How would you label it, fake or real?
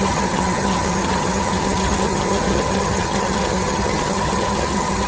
fake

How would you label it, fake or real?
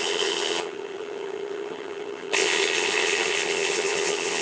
fake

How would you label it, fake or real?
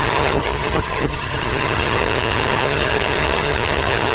fake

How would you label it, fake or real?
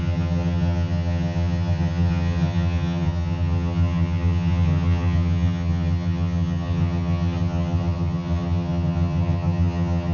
fake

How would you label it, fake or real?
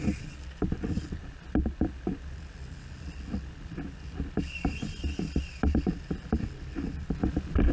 real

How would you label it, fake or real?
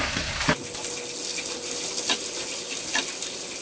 real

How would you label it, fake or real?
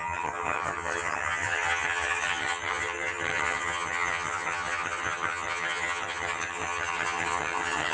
fake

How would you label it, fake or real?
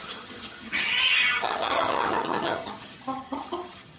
fake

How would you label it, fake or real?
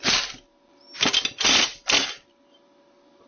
real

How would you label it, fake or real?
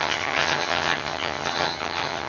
fake